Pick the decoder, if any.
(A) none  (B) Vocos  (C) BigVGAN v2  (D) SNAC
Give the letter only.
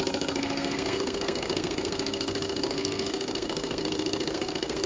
D